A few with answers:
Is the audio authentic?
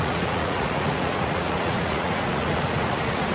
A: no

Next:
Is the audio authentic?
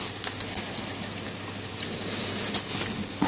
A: yes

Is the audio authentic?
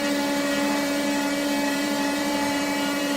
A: no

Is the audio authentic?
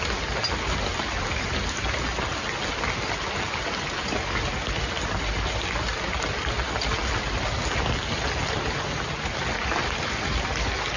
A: yes